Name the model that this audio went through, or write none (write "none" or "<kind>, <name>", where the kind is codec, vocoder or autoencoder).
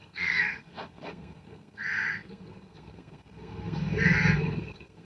codec, SNAC